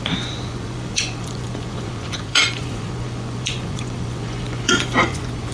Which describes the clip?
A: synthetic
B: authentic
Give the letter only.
A